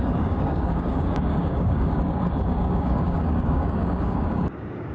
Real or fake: fake